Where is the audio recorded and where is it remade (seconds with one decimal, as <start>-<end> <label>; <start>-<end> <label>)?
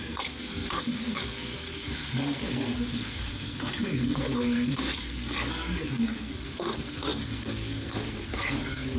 0.0-9.0 remade